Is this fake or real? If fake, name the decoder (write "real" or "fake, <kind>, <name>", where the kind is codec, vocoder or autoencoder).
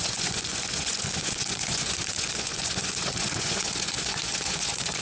fake, vocoder, Vocos